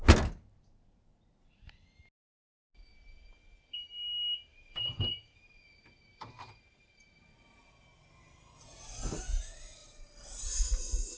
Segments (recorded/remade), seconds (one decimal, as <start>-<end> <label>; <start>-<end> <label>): 0.0-4.5 recorded; 4.5-7.7 remade; 7.7-9.8 recorded; 9.8-10.7 remade; 10.7-11.2 recorded